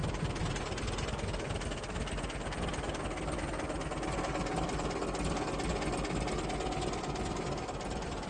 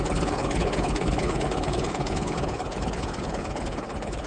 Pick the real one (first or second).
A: first